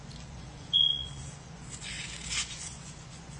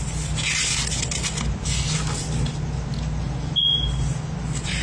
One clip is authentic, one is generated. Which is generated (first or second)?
first